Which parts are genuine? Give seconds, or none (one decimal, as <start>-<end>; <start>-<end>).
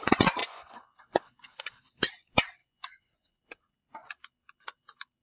0.0-0.4; 1.0-2.6; 3.4-5.2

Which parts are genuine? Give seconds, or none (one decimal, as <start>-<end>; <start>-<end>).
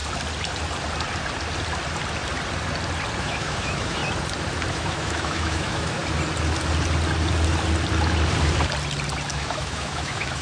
0.0-3.2; 4.0-4.7; 6.0-9.3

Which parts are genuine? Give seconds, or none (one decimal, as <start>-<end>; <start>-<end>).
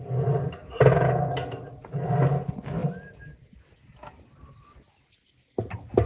0.0-6.1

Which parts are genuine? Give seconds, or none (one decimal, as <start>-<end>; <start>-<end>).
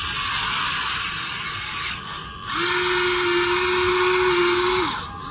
0.0-5.3